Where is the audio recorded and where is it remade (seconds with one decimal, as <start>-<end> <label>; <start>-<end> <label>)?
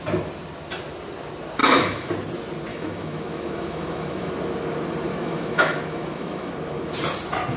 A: 0.0-1.6 recorded; 1.6-2.1 remade; 2.1-2.7 recorded; 2.7-4.3 remade; 4.3-5.1 recorded; 5.1-6.5 remade; 6.5-7.6 recorded